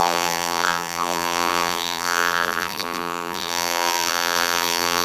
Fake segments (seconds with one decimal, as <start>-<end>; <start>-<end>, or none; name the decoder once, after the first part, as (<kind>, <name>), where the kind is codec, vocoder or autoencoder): 0.0-5.0 (vocoder, BigVGAN v2)